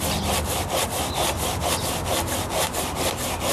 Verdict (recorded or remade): recorded